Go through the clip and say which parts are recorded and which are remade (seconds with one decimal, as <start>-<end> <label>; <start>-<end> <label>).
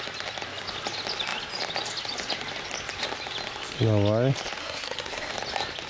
0.0-4.6 recorded; 4.6-5.3 remade; 5.3-5.9 recorded